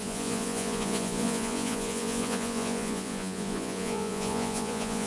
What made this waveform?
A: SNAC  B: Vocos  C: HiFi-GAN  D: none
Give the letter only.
B